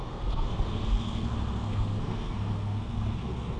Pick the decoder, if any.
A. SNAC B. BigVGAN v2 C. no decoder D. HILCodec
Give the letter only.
A